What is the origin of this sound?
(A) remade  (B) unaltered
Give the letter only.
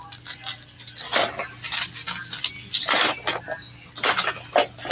B